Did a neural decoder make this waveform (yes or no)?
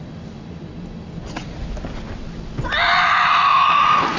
no